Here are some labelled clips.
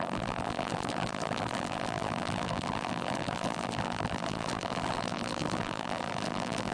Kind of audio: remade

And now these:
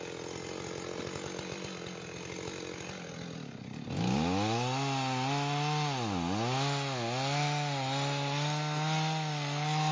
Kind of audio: recorded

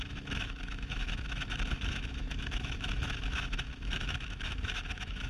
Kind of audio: remade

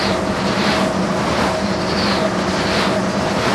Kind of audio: recorded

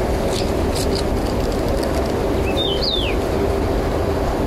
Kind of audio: recorded